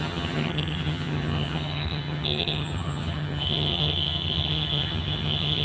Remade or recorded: remade